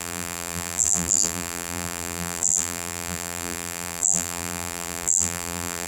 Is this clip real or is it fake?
fake